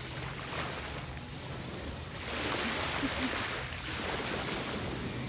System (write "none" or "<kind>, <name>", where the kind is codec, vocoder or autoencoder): none